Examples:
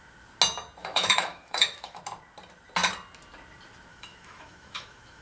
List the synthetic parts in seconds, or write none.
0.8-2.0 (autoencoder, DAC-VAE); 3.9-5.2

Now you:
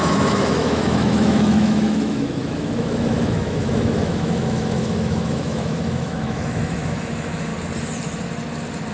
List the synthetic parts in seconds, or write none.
0.0-7.5 (autoencoder, DAC-VAE)

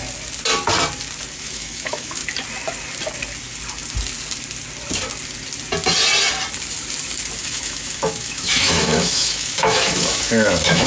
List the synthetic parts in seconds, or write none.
1.4-2.2 (autoencoder, DAC-VAE); 7.4-10.9